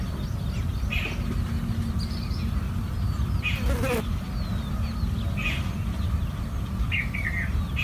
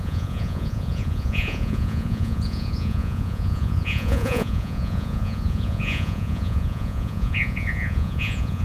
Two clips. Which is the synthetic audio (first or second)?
second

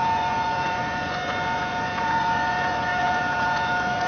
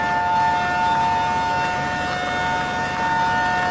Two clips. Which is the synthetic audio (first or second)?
first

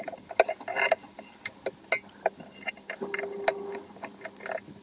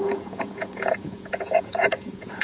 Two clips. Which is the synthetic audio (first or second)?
second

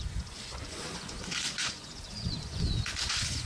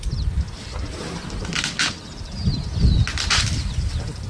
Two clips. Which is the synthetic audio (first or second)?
first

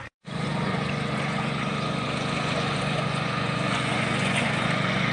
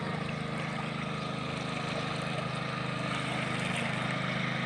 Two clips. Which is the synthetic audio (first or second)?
first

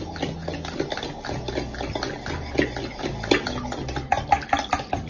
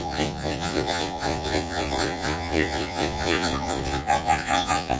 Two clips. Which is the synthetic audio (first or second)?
second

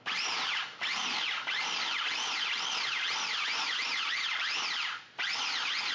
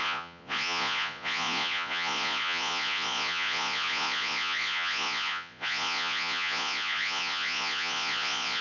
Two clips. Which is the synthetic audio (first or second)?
second